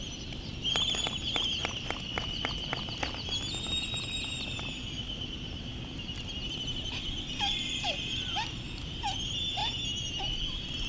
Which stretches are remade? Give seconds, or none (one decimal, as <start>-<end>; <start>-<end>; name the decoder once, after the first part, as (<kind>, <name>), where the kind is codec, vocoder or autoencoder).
0.0-0.5 (vocoder, BigVGAN v2); 1.8-9.6